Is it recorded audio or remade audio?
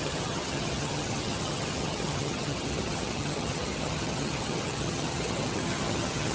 remade